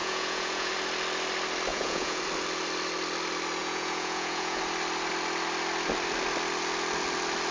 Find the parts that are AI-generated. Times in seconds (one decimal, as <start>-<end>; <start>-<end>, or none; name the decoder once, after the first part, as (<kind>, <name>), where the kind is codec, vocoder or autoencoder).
0.0-0.7 (vocoder, Vocos); 1.7-2.2; 3.6-4.6